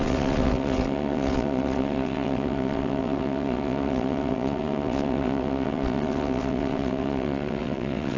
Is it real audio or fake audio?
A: fake